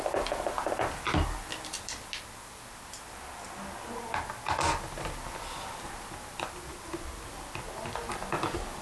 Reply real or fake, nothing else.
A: real